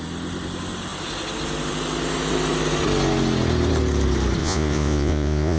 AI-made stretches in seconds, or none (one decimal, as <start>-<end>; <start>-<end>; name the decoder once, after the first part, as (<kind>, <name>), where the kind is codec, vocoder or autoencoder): 4.4-5.6 (vocoder, Vocos)